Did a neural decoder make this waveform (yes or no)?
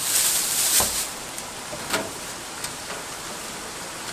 yes